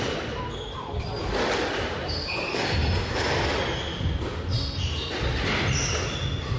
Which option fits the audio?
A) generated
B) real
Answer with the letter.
B